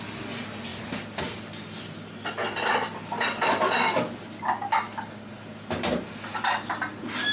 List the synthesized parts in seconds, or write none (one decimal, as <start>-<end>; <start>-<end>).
0.7-1.2